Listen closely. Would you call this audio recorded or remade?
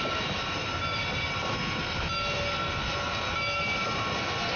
recorded